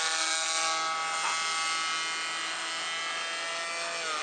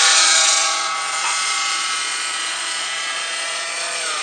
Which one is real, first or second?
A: first